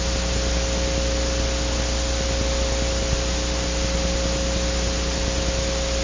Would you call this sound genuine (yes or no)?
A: yes